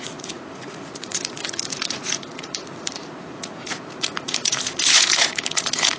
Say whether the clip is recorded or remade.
remade